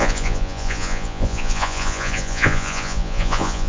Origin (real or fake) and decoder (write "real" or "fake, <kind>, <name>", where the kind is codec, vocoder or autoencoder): fake, vocoder, Vocos